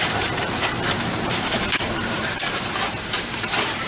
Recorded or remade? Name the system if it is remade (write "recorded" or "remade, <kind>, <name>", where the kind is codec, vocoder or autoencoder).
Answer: remade, vocoder, BigVGAN v2